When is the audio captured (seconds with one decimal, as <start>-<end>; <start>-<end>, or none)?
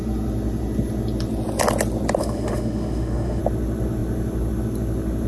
0.0-2.2; 3.4-5.3